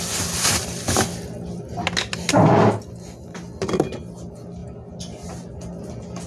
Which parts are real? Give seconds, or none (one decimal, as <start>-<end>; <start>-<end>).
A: 0.0-6.3